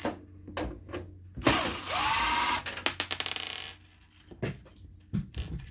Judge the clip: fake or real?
real